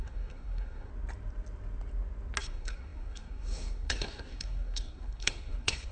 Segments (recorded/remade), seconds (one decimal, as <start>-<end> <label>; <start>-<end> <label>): 0.0-0.9 remade; 0.9-2.4 recorded; 2.4-5.9 remade